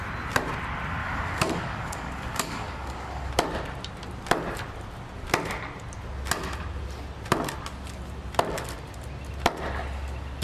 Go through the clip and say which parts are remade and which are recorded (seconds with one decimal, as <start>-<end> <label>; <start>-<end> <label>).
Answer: 0.0-1.0 recorded; 1.0-3.3 remade; 3.3-10.4 recorded